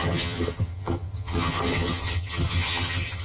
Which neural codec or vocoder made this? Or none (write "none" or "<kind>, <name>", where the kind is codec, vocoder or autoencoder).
vocoder, HiFi-GAN